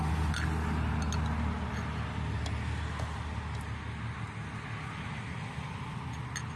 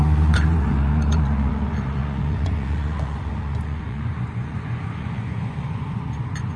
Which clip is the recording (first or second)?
first